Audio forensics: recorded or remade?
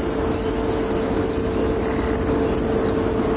recorded